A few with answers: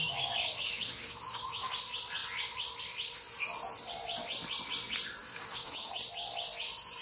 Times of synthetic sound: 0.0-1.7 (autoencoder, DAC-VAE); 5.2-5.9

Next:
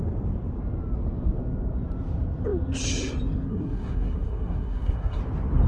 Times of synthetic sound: 3.5-5.2 (codec, SNAC)

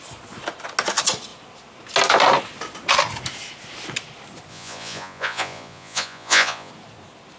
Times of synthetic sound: 4.5-6.7 (vocoder, Vocos)

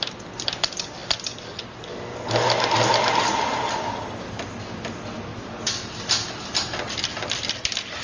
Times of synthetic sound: 0.0-1.0 (vocoder, BigVGAN v2); 2.9-5.3; 6.9-8.0